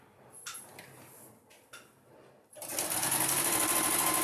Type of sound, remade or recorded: recorded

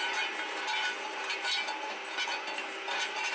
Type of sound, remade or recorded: recorded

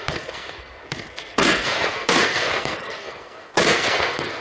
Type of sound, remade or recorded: remade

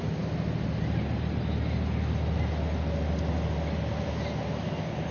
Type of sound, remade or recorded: recorded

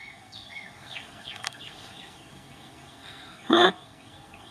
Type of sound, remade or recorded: remade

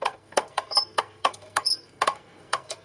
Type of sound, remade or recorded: remade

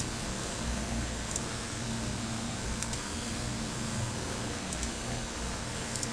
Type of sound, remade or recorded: remade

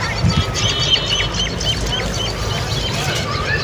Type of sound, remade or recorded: recorded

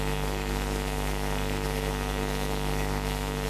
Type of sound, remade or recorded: remade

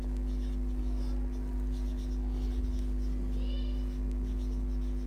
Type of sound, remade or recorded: recorded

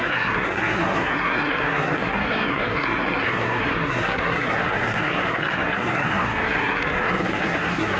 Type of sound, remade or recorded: remade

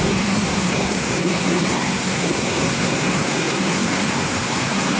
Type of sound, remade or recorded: remade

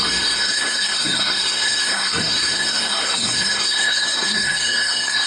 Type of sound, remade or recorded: remade